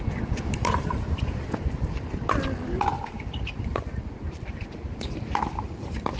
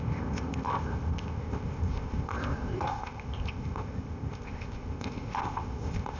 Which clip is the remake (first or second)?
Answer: second